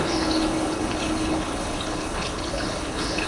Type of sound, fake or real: fake